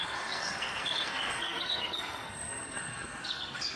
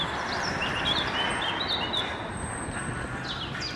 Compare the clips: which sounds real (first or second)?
second